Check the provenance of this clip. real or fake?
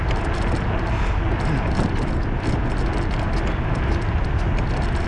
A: real